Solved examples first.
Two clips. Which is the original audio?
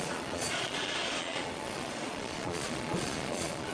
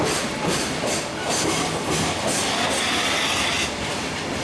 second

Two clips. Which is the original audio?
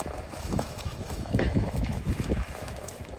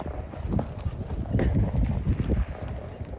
second